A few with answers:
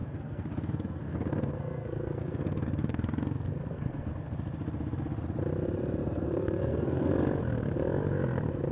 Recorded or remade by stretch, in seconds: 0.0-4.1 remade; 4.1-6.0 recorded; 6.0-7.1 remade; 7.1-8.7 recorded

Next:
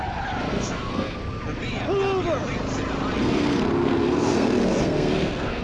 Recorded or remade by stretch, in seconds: 0.0-0.5 recorded; 0.5-1.2 remade; 1.2-3.2 recorded; 3.2-5.6 remade